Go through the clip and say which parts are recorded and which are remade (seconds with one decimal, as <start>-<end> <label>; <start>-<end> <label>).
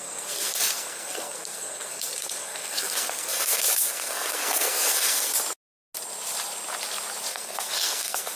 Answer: 0.0-5.3 remade; 5.3-7.3 recorded; 7.3-8.4 remade